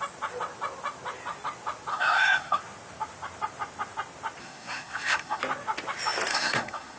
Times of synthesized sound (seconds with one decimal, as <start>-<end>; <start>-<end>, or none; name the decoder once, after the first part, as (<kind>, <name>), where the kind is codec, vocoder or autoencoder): 1.9-2.6 (codec, SNAC); 4.4-5.4; 6.3-7.0